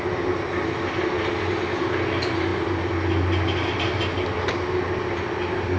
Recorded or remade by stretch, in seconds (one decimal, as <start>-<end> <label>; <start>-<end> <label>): 0.0-5.8 recorded